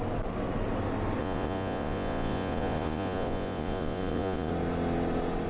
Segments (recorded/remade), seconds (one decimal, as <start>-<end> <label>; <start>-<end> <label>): 0.0-1.2 recorded; 1.2-4.5 remade; 4.5-5.5 recorded